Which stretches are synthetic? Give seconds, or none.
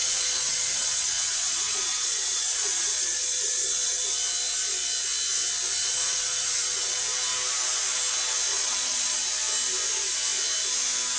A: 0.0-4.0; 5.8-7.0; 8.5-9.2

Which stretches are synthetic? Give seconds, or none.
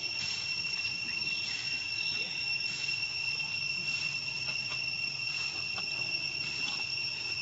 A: 0.0-2.2; 3.8-4.2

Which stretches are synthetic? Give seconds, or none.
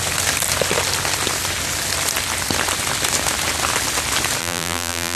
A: 4.4-5.2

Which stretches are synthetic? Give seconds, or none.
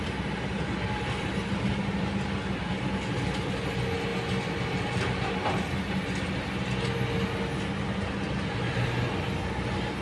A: none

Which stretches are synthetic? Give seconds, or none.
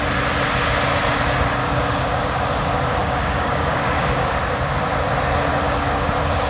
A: 1.6-2.4; 3.0-4.3; 5.5-6.1